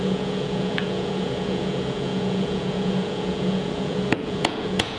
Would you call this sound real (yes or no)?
no